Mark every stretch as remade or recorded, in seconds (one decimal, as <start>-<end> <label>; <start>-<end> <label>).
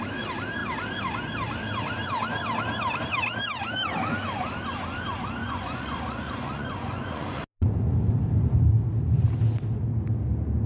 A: 0.0-5.4 recorded; 5.4-7.4 remade; 7.4-10.7 recorded